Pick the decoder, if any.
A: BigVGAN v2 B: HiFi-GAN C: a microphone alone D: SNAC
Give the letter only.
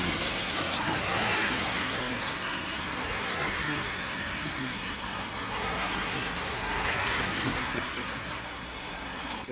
D